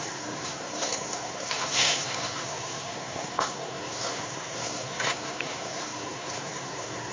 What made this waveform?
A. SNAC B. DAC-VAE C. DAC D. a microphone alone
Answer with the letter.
A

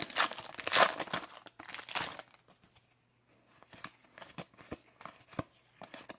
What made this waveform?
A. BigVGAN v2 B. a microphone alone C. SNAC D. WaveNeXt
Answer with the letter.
B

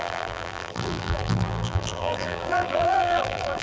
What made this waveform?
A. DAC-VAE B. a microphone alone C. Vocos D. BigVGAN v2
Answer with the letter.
D